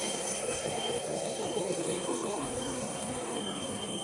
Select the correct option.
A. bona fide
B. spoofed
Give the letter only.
B